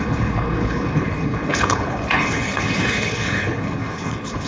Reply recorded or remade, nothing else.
remade